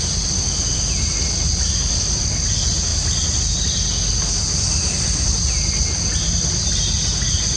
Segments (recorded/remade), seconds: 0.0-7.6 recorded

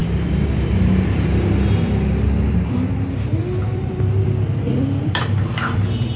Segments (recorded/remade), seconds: 0.0-3.7 recorded; 3.7-6.2 remade

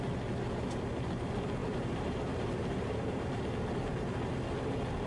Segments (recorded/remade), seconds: 0.0-1.6 recorded; 1.6-3.4 remade; 3.4-5.1 recorded

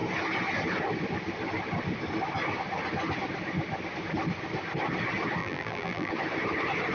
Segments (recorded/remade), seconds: 0.0-5.4 recorded; 5.4-6.1 remade; 6.1-6.9 recorded

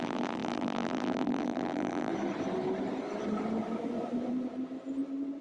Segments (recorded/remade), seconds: 0.0-2.1 remade; 2.1-5.4 recorded